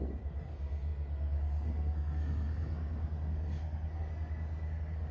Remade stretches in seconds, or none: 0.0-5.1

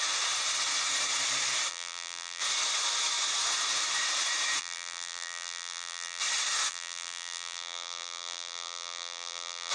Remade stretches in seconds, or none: 1.7-2.4; 4.6-6.2; 6.7-9.7

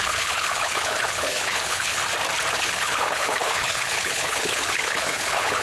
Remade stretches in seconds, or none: 0.0-2.0; 2.6-5.6

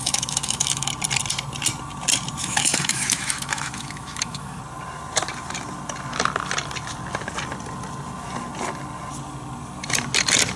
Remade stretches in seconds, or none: 0.0-0.9; 2.4-4.6

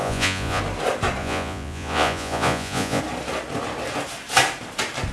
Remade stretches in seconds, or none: 0.0-0.6; 1.2-3.0